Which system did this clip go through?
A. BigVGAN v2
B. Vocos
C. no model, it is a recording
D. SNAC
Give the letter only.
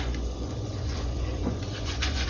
B